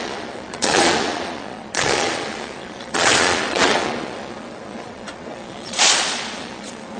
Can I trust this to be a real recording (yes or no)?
no